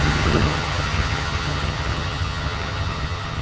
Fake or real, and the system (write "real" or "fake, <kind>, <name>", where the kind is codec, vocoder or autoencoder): fake, vocoder, HiFi-GAN